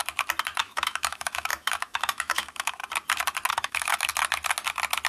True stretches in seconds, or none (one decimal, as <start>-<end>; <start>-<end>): 0.0-0.6; 2.8-3.5; 4.1-5.1